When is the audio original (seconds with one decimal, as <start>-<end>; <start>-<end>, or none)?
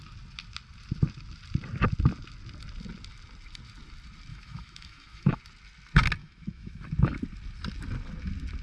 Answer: 0.0-4.3; 5.4-6.2; 6.8-8.6